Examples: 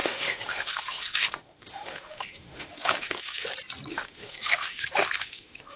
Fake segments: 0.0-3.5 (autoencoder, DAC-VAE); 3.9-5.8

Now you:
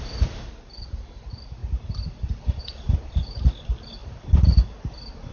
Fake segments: none

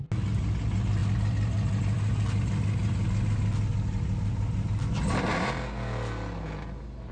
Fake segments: none